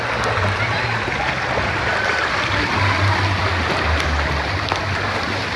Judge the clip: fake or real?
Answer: real